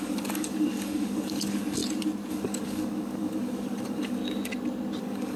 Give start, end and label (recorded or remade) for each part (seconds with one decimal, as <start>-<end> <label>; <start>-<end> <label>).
0.0-1.8 remade; 1.8-2.3 recorded; 2.3-4.2 remade; 4.2-5.0 recorded; 5.0-5.4 remade